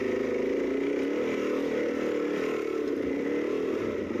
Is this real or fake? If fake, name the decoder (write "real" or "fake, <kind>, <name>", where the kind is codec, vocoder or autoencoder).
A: real